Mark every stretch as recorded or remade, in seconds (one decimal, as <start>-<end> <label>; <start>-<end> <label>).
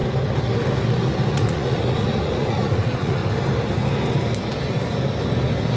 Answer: 0.0-1.3 recorded; 1.3-3.2 remade; 3.2-5.8 recorded